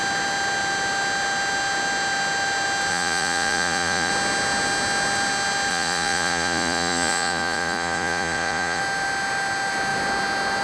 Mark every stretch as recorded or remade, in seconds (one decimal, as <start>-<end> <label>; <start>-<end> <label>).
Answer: 0.0-2.9 recorded; 2.9-4.1 remade; 4.1-5.7 recorded; 5.7-8.8 remade; 8.8-10.6 recorded